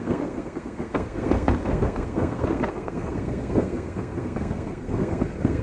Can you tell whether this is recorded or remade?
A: remade